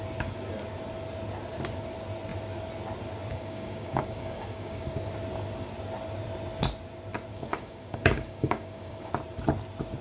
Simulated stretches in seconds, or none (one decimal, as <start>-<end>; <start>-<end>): 3.3-5.1; 7.3-9.1